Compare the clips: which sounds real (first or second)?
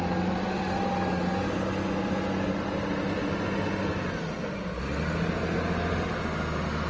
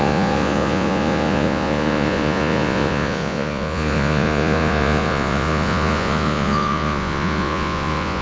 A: first